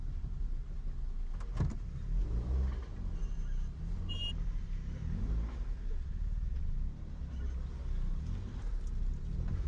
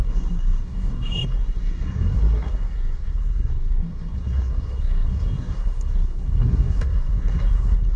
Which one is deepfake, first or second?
second